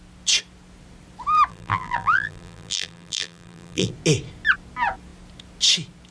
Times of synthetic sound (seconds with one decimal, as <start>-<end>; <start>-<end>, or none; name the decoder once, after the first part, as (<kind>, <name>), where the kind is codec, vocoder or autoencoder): 1.5-3.9 (vocoder, BigVGAN v2)